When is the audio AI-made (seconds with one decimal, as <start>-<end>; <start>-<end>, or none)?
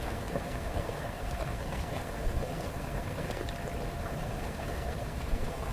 0.0-3.4; 4.0-5.7